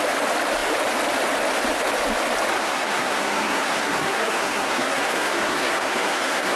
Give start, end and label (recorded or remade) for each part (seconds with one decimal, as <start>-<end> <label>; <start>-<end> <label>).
0.0-2.6 recorded; 2.6-6.6 remade